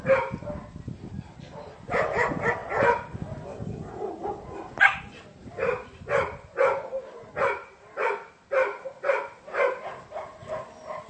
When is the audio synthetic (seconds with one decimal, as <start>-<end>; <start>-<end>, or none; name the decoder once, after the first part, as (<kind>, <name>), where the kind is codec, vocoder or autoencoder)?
none